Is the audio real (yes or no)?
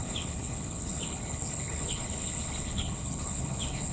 no